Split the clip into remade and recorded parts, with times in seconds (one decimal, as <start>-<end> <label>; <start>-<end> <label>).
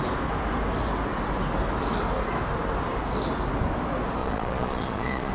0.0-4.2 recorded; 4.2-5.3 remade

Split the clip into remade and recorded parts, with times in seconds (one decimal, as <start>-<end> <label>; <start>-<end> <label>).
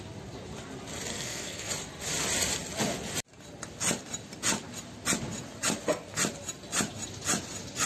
0.0-1.1 recorded; 1.1-1.7 remade; 1.7-7.9 recorded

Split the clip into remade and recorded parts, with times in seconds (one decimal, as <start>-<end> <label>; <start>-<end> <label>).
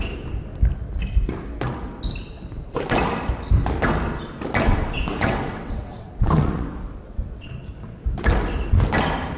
0.0-4.7 recorded; 4.7-7.5 remade; 7.5-9.4 recorded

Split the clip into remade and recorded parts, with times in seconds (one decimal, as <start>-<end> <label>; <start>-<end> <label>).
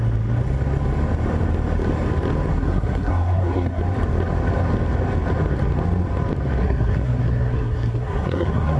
0.0-2.5 recorded; 2.5-3.8 remade; 3.8-6.6 recorded; 6.6-8.8 remade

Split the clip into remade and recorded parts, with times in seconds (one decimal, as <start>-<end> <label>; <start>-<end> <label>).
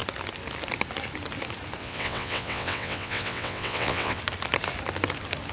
0.0-1.8 recorded; 1.8-4.2 remade; 4.2-5.5 recorded